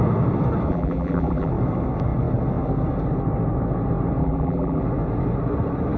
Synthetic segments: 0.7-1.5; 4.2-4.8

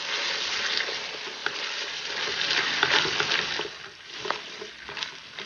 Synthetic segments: 1.4-4.7

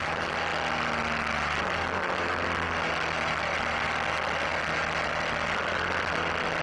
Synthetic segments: none

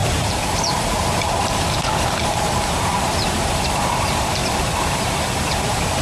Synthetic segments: 0.0-4.4; 5.0-6.0